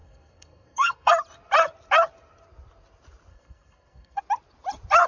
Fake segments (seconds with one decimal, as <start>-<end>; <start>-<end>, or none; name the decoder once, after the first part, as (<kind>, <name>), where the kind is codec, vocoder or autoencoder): 0.0-1.1 (codec, SNAC); 3.3-4.2